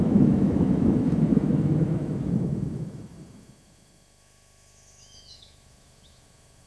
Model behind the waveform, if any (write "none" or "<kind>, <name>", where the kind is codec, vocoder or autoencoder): autoencoder, DAC-VAE